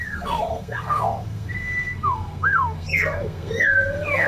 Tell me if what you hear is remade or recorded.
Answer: remade